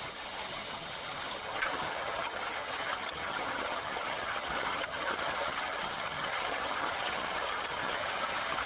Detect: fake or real fake